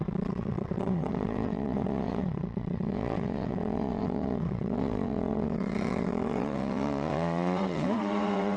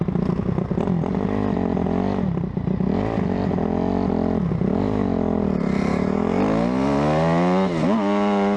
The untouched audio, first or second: second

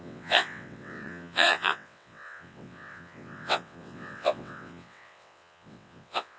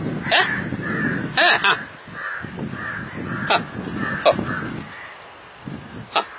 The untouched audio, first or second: second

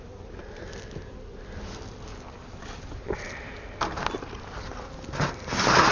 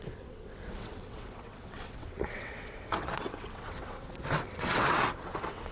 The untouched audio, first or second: first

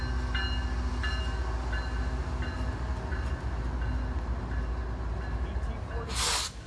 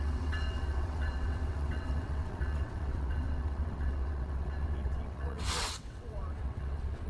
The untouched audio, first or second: first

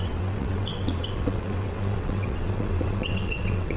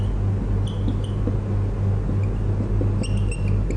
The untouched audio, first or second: second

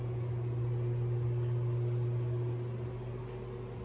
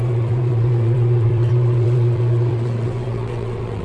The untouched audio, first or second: first